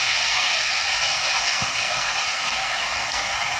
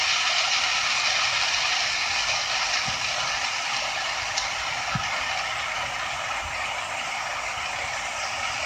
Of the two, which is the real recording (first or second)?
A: second